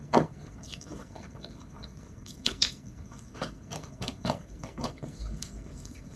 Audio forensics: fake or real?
fake